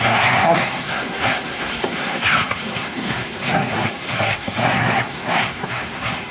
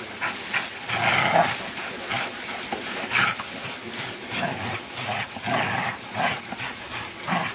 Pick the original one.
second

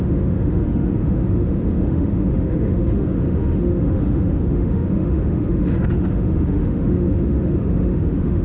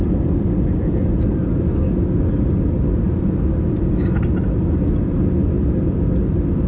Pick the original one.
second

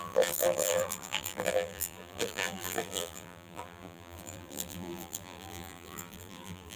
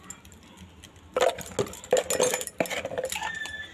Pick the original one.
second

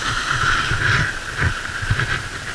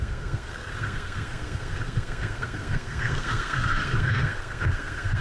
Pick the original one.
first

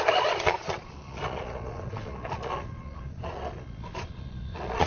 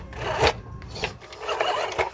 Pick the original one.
second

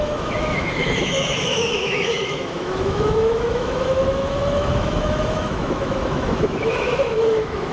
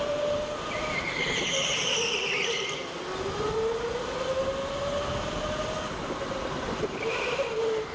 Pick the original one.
second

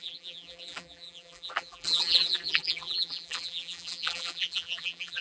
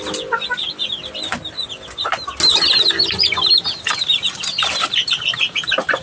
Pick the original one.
second